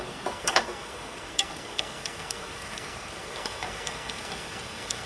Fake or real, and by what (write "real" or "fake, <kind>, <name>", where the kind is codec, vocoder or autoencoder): fake, codec, SNAC